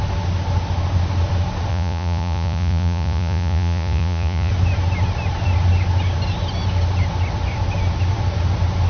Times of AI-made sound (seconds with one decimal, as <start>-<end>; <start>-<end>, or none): 1.7-4.5